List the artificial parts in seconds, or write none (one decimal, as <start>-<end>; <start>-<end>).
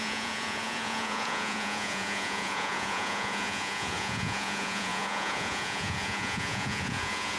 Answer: 0.0-7.4